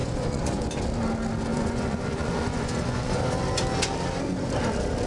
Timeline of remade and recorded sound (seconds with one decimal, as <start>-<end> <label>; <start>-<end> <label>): 0.0-0.8 remade; 0.8-1.5 recorded; 1.5-3.2 remade; 3.2-5.1 recorded